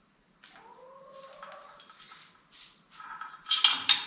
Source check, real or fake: real